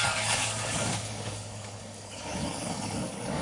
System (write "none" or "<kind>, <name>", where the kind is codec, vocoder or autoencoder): codec, DAC